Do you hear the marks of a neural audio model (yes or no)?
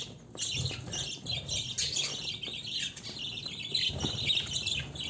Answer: no